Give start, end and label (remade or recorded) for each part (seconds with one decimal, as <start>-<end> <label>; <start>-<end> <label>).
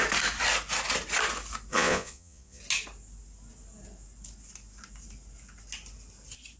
0.0-1.7 recorded; 1.7-2.6 remade; 2.6-6.6 recorded